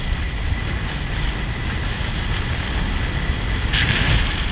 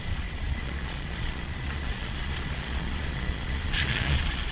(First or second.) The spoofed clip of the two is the second